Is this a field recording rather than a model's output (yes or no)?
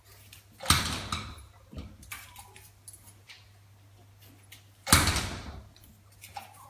yes